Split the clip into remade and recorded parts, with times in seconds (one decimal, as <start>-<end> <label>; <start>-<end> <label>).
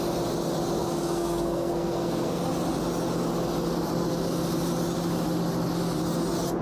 0.0-0.8 recorded; 0.8-2.4 remade; 2.4-6.6 recorded